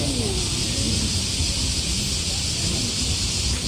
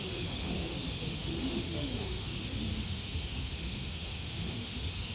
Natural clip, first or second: first